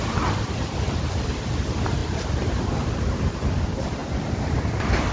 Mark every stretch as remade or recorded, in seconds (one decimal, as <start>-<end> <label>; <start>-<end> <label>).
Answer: 0.0-0.7 remade; 0.7-2.0 recorded; 2.0-3.5 remade; 3.5-4.0 recorded; 4.0-4.6 remade; 4.6-5.1 recorded

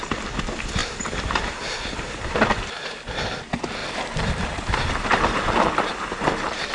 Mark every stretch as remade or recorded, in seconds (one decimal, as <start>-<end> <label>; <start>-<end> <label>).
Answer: 0.0-3.8 recorded; 3.8-6.7 remade

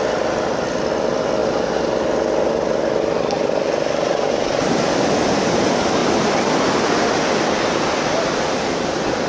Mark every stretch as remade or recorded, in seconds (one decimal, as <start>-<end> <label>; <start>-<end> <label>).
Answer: 0.0-1.4 recorded; 1.4-4.3 remade; 4.3-6.0 recorded; 6.0-6.6 remade; 6.6-9.3 recorded

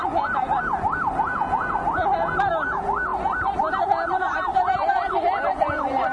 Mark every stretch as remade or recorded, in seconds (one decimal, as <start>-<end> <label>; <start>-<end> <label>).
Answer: 0.0-6.1 recorded